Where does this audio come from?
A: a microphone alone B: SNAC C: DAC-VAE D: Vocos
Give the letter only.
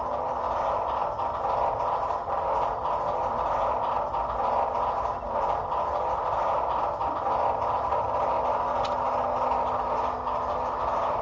A